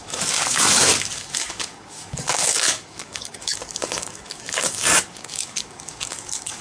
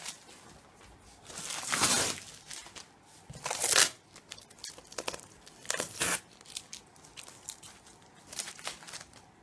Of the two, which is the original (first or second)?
second